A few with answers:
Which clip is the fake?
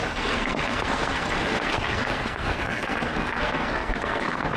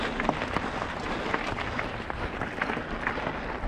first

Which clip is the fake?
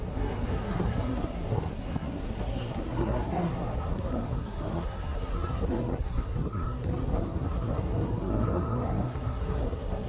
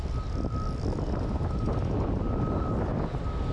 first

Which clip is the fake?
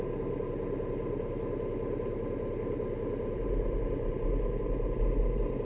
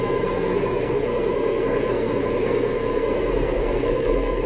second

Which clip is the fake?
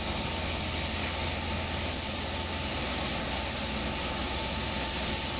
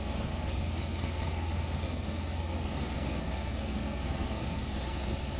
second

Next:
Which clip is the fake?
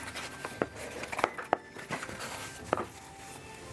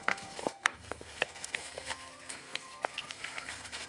second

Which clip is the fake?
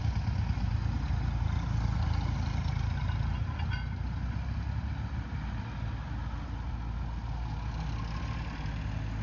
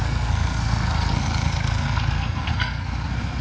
second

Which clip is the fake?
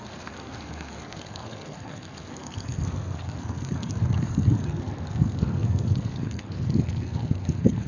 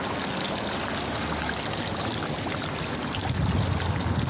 first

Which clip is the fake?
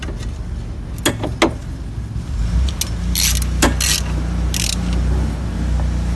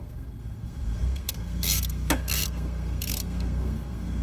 second